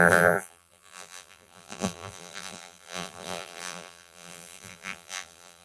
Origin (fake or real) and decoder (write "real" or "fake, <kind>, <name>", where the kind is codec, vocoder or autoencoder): fake, vocoder, BigVGAN v2